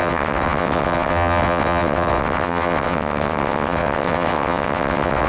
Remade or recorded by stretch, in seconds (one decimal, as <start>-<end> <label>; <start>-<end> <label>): 0.0-5.3 remade